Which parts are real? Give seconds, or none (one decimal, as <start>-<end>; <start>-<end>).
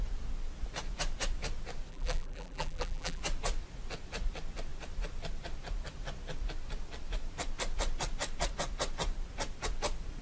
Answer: 0.0-1.9; 3.2-10.2